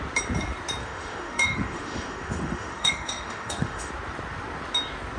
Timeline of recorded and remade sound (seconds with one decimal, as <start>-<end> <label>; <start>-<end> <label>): 0.0-0.8 recorded; 0.8-3.9 remade; 3.9-5.2 recorded